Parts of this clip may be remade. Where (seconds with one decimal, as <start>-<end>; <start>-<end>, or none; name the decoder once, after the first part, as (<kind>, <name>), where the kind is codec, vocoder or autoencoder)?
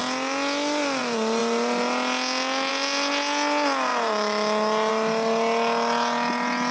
none